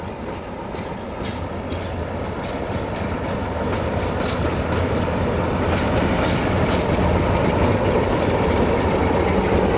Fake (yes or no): no